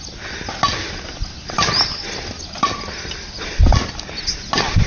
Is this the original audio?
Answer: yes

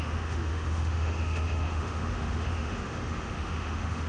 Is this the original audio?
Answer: no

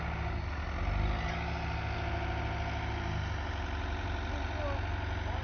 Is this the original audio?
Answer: yes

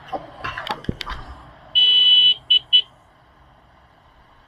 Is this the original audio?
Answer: yes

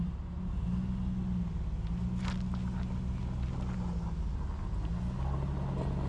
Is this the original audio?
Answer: yes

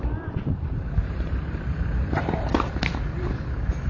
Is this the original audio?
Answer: no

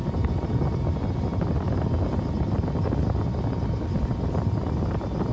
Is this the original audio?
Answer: yes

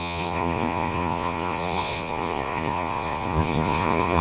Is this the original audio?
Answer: no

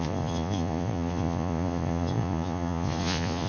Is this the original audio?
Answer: no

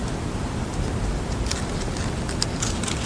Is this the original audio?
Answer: yes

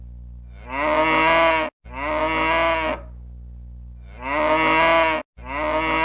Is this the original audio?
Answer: yes